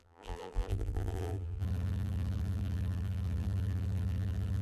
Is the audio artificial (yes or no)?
yes